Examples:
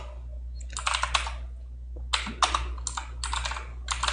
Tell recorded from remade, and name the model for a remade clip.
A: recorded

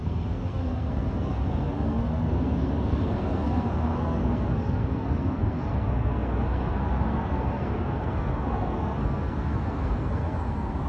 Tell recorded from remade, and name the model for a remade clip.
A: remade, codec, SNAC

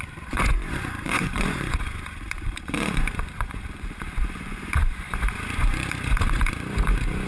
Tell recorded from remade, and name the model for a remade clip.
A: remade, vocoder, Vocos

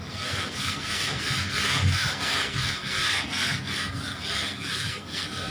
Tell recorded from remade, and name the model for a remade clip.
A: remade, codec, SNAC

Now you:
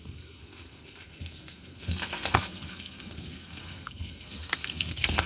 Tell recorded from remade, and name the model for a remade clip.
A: remade, codec, SNAC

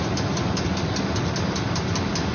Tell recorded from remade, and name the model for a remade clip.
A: recorded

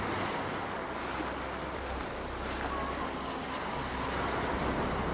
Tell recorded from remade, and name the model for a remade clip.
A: recorded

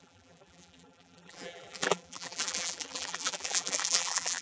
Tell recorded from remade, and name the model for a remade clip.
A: remade, vocoder, BigVGAN v2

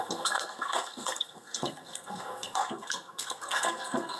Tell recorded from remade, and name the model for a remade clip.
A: remade, codec, SNAC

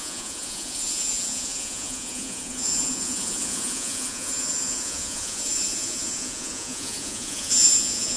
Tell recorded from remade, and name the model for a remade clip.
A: remade, vocoder, Vocos